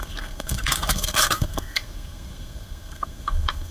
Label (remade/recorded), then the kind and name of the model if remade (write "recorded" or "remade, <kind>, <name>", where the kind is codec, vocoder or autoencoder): remade, codec, SNAC